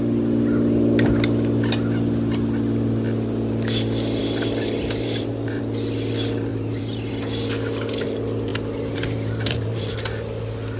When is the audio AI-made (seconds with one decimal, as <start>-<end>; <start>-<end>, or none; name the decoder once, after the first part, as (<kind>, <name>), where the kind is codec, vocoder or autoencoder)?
4.2-5.6 (vocoder, BigVGAN v2); 6.5-7.1; 8.5-9.9